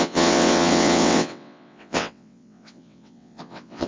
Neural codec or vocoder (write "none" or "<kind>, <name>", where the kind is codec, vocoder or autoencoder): vocoder, WaveNeXt